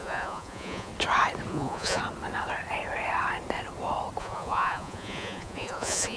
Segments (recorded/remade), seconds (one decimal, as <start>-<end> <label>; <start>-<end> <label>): 0.0-0.9 remade; 0.9-1.5 recorded; 1.5-2.0 remade; 2.0-4.2 recorded; 4.2-6.2 remade